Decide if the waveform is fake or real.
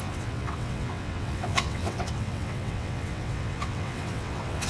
fake